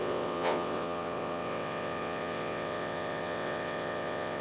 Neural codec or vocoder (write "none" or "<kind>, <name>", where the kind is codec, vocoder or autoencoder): vocoder, WaveNeXt